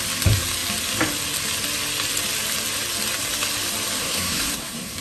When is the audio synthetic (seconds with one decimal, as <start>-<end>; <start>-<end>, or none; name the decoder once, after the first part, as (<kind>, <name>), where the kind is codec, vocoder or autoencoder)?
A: 4.0-5.0 (codec, SNAC)